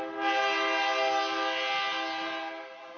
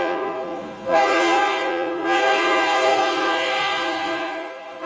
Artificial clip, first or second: second